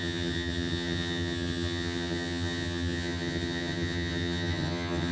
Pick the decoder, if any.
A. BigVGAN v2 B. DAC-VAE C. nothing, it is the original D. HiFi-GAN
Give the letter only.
D